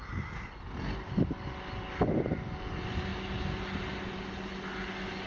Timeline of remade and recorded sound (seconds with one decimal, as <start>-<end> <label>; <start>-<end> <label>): 0.0-5.3 recorded